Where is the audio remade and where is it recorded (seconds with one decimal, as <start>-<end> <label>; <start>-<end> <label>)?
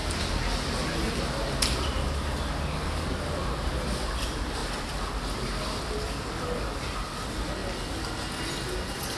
0.0-9.2 recorded